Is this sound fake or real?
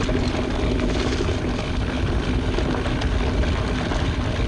real